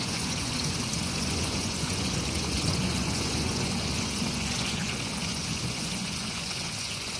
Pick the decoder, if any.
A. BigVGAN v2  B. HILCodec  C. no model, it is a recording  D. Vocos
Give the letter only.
D